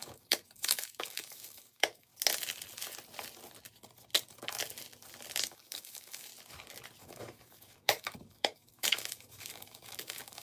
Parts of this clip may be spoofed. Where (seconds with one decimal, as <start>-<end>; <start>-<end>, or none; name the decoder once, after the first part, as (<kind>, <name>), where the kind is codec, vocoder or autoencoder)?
0.0-2.1 (codec, DAC); 5.4-6.3; 7.0-10.4